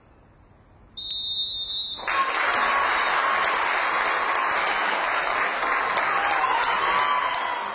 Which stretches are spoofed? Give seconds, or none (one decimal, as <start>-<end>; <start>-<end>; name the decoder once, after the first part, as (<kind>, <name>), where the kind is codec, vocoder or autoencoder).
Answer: none